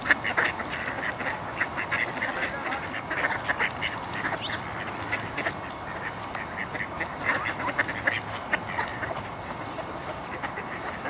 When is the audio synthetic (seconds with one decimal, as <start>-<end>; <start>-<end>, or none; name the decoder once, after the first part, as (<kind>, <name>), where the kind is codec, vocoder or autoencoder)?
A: 8.9-9.5 (vocoder, BigVGAN v2)